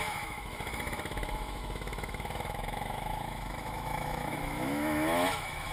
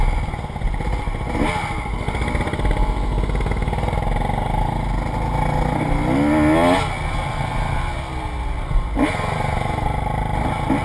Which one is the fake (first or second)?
first